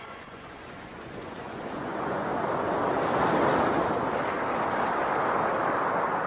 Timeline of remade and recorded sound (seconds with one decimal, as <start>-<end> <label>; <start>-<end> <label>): 0.0-2.3 remade; 2.3-6.3 recorded